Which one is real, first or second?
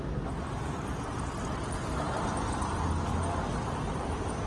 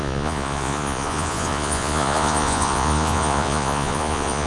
first